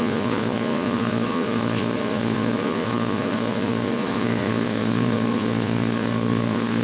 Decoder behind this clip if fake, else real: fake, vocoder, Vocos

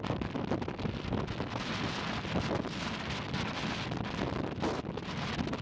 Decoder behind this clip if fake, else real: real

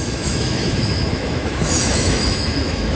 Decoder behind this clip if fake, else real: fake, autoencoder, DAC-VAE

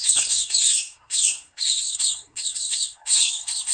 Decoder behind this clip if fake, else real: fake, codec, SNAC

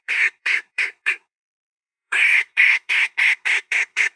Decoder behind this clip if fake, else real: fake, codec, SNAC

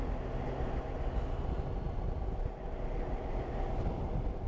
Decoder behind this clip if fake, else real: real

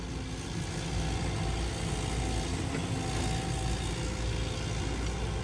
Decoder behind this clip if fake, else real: real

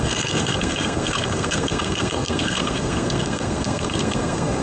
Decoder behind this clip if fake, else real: fake, codec, SNAC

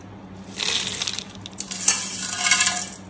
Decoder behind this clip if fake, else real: real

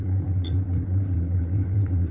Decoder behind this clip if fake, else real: fake, vocoder, WaveNeXt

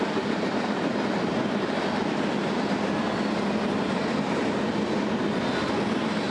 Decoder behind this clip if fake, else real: real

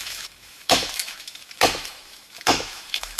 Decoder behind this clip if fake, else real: fake, autoencoder, DAC-VAE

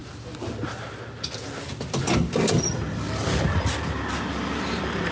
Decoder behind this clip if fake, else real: real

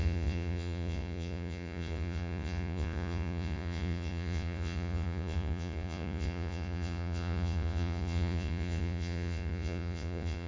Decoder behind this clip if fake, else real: fake, vocoder, Vocos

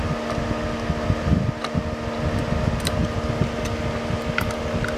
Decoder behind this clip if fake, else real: real